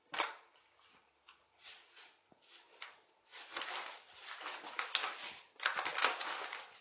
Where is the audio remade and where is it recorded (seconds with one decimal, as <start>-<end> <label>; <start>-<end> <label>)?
0.0-6.8 recorded